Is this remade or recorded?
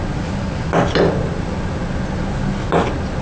recorded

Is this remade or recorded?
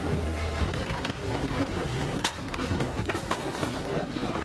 remade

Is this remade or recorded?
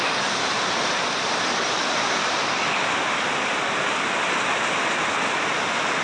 recorded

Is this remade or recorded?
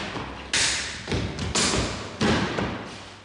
recorded